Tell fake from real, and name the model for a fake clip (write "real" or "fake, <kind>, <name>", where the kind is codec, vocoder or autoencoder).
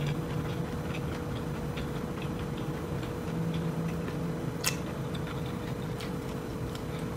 real